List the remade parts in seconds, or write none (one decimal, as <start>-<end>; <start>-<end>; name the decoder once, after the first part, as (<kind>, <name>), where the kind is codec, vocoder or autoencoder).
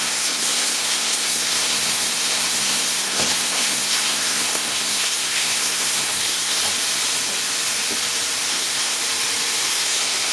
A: 0.0-6.6 (codec, SNAC); 8.5-9.0; 9.7-10.3